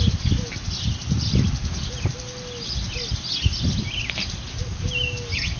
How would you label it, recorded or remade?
recorded